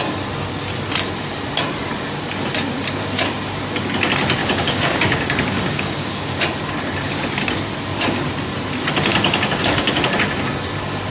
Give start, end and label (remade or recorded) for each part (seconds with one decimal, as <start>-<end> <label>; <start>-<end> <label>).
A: 0.0-4.4 recorded; 4.4-6.4 remade; 6.4-9.1 recorded; 9.1-10.0 remade; 10.0-11.1 recorded